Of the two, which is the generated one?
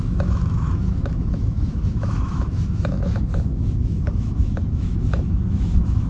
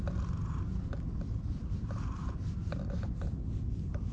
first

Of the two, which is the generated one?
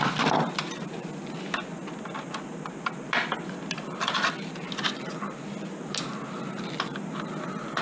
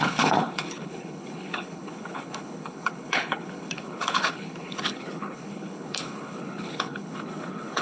second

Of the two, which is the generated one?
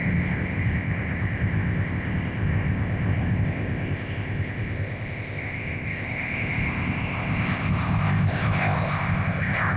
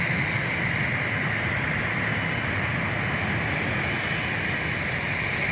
first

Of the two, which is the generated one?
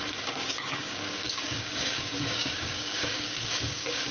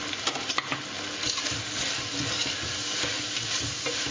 first